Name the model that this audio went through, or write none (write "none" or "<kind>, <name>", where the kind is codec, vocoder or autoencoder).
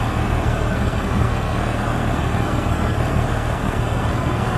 codec, SNAC